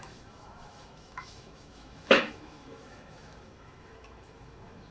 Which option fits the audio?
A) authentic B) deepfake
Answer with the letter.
B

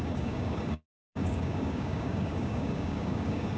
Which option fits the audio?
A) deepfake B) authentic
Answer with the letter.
A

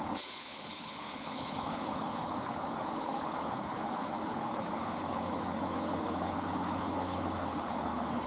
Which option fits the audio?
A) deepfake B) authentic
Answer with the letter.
A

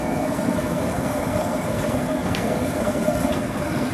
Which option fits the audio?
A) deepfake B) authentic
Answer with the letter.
A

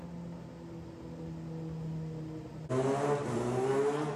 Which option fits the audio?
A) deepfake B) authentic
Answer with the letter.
B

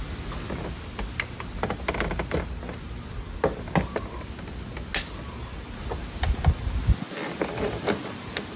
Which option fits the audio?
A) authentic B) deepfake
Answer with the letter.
A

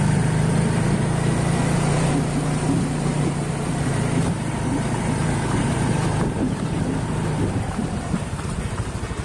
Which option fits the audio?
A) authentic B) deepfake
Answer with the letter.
B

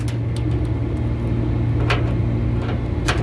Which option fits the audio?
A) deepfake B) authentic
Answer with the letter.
B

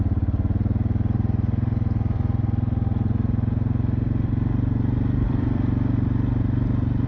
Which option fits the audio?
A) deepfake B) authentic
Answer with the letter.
B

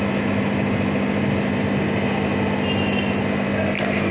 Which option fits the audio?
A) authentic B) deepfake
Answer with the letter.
A